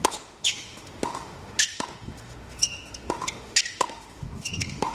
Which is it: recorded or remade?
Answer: remade